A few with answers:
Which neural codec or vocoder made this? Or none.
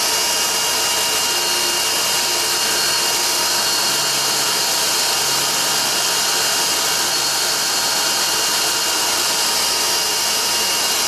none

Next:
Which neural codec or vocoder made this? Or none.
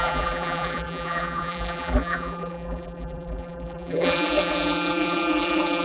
vocoder, BigVGAN v2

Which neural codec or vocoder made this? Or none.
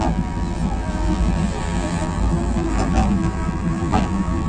vocoder, BigVGAN v2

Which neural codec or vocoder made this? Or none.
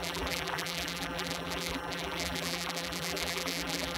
vocoder, BigVGAN v2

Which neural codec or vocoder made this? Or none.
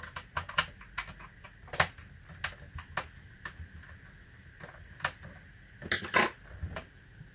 none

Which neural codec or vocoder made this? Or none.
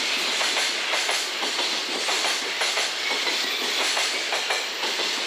none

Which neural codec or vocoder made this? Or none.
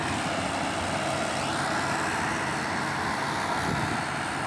none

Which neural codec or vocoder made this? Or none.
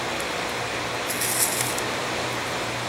none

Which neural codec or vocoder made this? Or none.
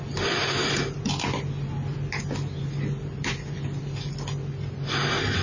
none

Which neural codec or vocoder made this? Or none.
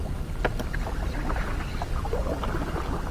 none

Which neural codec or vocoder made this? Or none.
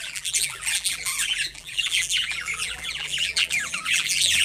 vocoder, BigVGAN v2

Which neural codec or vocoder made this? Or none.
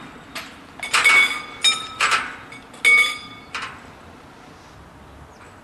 none